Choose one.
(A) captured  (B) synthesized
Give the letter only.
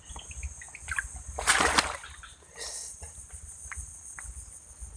A